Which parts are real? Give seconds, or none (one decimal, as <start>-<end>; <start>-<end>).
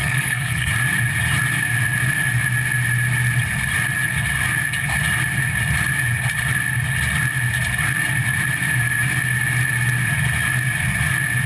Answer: 0.7-11.5